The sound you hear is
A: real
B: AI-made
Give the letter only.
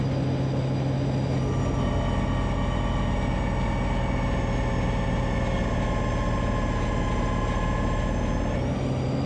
A